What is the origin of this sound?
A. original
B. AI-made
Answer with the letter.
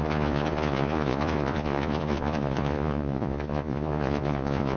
B